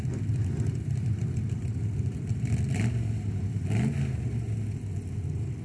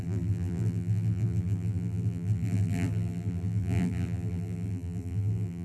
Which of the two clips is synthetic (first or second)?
second